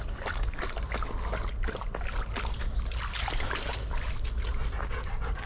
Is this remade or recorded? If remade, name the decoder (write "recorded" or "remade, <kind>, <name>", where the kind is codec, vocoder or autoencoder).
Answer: recorded